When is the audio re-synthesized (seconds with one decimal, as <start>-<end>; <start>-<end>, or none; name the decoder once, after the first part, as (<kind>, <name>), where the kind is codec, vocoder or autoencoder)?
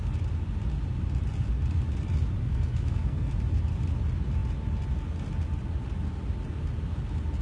2.4-3.3 (codec, SNAC)